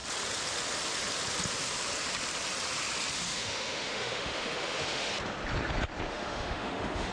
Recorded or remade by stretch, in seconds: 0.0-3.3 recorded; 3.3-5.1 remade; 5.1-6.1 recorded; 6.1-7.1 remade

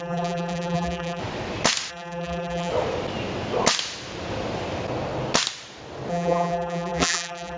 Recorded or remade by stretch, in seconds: 0.0-1.2 remade; 1.2-1.9 recorded; 1.9-2.7 remade; 2.7-6.1 recorded; 6.1-7.6 remade

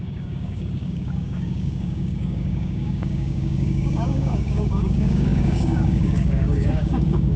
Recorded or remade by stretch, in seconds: 0.0-7.4 remade